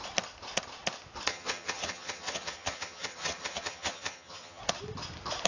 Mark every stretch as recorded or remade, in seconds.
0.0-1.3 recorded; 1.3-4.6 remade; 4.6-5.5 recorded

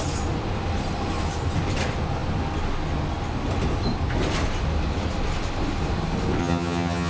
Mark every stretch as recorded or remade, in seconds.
0.0-6.4 recorded; 6.4-7.1 remade

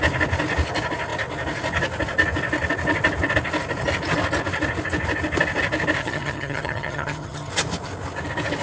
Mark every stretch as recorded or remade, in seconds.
0.0-6.0 recorded; 6.0-7.5 remade; 7.5-8.6 recorded

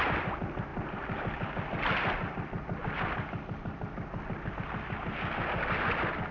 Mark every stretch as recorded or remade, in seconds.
0.0-6.3 recorded

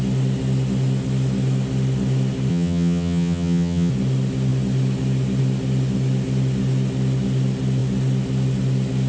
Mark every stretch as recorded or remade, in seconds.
0.0-2.5 recorded; 2.5-3.9 remade; 3.9-9.1 recorded

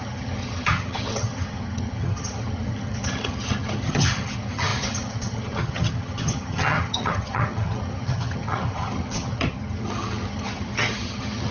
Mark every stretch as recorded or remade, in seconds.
0.0-11.5 remade

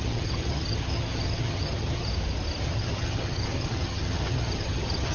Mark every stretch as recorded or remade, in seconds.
0.0-2.1 remade; 2.1-2.6 recorded; 2.6-5.1 remade

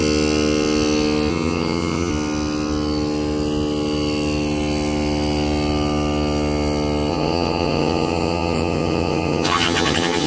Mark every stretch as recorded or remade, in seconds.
0.0-1.3 recorded; 1.3-2.1 remade; 2.1-7.1 recorded; 7.1-10.3 remade